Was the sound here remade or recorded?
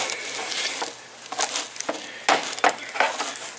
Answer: recorded